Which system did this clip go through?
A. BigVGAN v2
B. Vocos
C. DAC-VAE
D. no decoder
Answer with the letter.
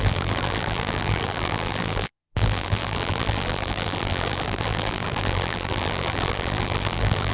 A